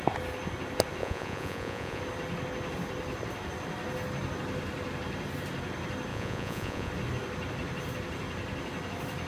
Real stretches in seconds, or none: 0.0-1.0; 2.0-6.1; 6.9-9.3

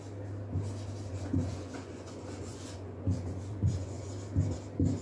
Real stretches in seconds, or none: 0.0-1.1; 4.1-5.0

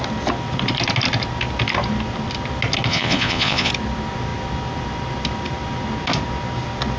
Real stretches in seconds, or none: 0.0-2.9; 3.7-7.0